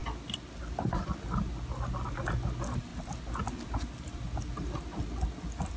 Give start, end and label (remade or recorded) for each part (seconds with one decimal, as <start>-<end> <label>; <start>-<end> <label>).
0.0-5.8 recorded